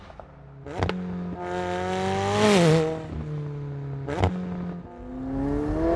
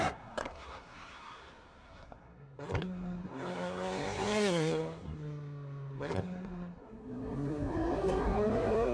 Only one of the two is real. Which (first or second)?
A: first